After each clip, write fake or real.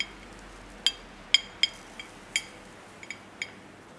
real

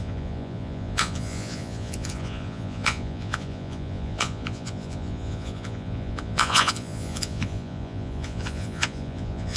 fake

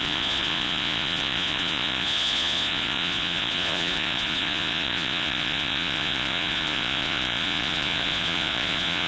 fake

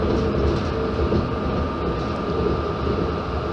real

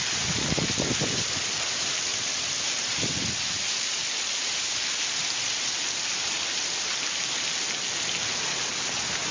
real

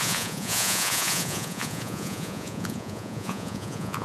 fake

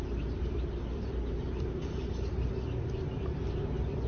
real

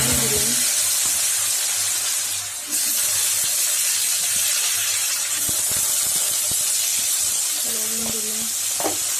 real